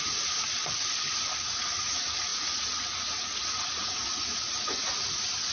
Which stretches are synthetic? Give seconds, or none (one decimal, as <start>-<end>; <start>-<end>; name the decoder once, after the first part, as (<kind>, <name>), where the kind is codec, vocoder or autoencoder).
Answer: 0.0-0.6 (vocoder, Vocos); 1.4-5.5